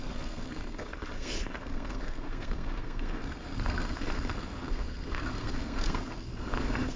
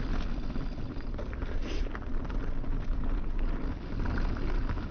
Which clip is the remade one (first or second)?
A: first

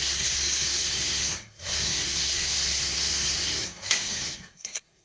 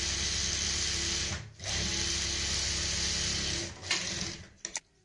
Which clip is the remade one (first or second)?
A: first